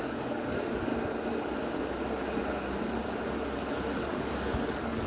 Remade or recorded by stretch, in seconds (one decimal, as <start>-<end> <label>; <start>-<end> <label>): 0.0-0.9 remade; 0.9-4.0 recorded; 4.0-5.1 remade